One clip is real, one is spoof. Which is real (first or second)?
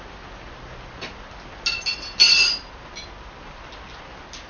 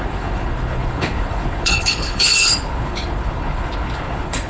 first